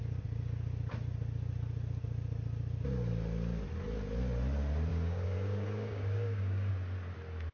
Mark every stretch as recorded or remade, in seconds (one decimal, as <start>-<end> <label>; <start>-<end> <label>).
0.0-4.9 recorded; 4.9-6.7 remade; 6.7-7.5 recorded